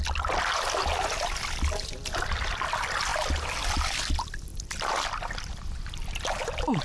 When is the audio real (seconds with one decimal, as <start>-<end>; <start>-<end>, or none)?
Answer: 0.0-6.8